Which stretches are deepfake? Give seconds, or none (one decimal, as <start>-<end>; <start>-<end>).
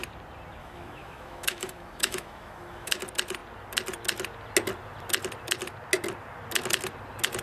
0.6-3.0